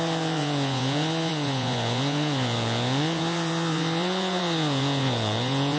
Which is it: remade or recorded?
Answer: remade